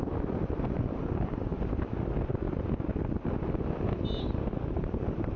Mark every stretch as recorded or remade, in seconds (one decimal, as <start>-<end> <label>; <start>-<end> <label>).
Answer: 0.0-1.5 remade; 1.5-4.7 recorded; 4.7-5.4 remade